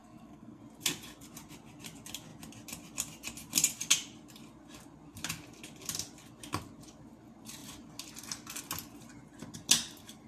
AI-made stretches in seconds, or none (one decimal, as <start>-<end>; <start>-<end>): 0.0-0.6